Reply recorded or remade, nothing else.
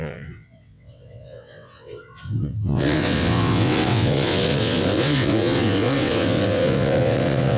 remade